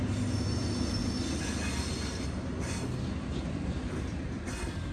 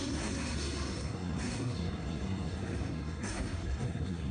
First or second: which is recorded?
first